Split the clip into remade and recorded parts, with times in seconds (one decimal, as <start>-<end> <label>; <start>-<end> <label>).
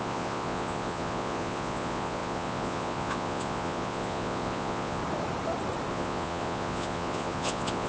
0.0-5.0 remade; 5.0-5.9 recorded; 5.9-7.9 remade